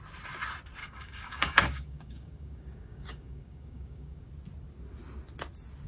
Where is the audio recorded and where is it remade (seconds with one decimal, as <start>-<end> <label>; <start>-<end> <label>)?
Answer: 0.0-0.8 recorded; 0.8-4.3 remade; 4.3-5.9 recorded